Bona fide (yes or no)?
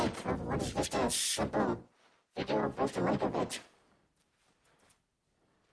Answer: yes